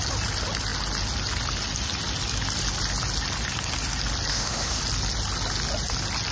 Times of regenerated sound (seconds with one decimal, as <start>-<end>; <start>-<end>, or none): 4.3-4.8